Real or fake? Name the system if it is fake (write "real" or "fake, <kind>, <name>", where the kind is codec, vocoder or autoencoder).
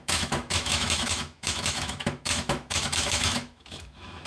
fake, autoencoder, DAC-VAE